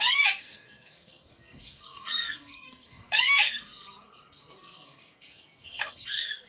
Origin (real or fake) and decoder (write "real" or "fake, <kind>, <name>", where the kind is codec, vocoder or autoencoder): fake, codec, SNAC